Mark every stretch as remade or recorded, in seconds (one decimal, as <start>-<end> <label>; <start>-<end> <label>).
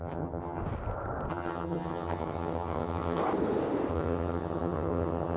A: 0.0-0.6 remade; 0.6-1.3 recorded; 1.3-3.2 remade; 3.2-3.9 recorded; 3.9-5.4 remade